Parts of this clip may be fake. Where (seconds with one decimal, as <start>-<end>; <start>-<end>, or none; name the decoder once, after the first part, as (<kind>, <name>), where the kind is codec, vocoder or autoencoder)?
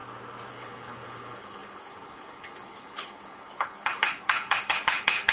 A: 0.5-5.3 (codec, HILCodec)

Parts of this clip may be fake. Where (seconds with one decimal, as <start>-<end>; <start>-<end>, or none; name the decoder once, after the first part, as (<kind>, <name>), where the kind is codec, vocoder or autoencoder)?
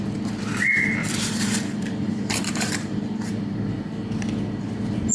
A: 1.0-3.3 (vocoder, BigVGAN v2)